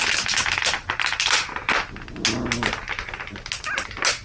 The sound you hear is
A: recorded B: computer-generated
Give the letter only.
A